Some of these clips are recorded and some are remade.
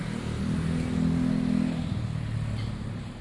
recorded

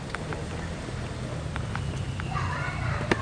recorded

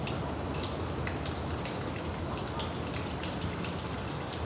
recorded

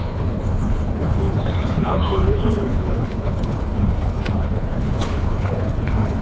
remade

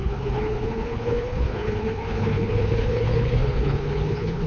remade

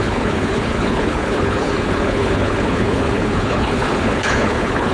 remade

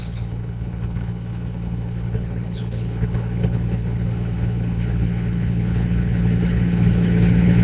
remade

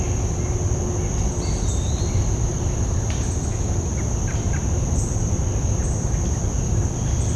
recorded